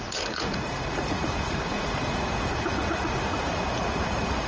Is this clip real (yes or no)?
no